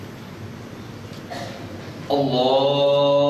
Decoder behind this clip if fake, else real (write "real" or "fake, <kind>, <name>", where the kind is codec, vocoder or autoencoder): real